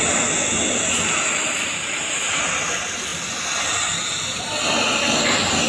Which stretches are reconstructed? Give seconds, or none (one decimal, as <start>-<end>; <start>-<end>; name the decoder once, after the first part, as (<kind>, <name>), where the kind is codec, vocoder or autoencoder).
none